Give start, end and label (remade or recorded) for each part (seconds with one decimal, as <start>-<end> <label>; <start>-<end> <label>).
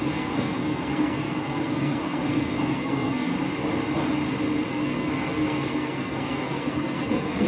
0.0-3.3 remade; 3.3-4.7 recorded; 4.7-7.5 remade